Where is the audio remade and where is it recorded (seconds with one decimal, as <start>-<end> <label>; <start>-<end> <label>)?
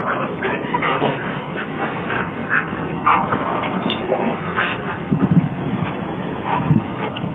0.0-0.7 recorded; 0.7-5.6 remade; 5.6-6.7 recorded; 6.7-7.3 remade